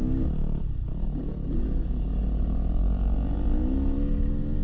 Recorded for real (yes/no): yes